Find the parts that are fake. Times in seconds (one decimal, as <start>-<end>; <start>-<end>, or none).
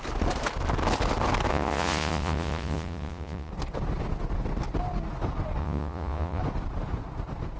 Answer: 1.5-3.5; 5.6-6.4